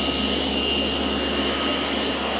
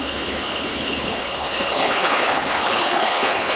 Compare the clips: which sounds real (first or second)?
first